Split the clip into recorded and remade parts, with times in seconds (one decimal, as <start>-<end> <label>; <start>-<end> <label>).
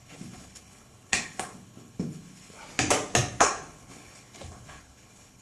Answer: 0.0-2.6 remade; 2.6-3.4 recorded; 3.4-5.4 remade